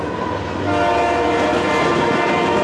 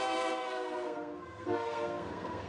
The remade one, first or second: second